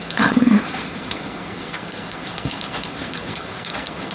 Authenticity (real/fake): fake